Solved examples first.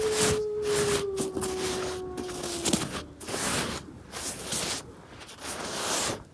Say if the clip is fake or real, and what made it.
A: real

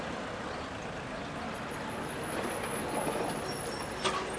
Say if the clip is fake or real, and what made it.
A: real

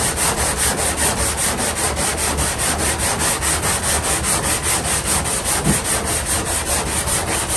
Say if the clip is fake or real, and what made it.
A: real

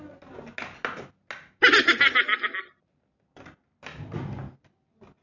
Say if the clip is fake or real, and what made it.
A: real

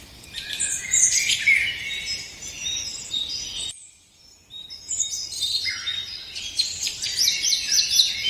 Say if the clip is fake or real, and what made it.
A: real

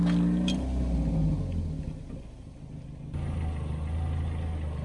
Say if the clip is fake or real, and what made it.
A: real